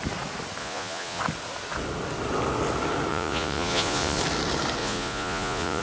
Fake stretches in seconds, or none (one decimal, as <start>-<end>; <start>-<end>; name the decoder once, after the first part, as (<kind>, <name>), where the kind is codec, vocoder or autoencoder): 0.6-1.2 (vocoder, Vocos); 3.1-4.2; 4.8-5.8